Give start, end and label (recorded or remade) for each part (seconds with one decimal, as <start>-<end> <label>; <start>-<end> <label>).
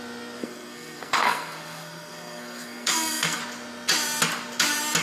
0.0-0.4 recorded; 0.4-3.4 remade; 3.4-5.0 recorded